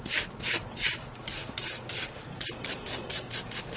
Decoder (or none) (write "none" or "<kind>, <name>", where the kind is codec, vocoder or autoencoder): none